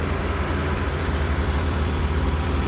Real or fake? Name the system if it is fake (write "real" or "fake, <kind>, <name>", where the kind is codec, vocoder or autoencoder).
fake, vocoder, BigVGAN v2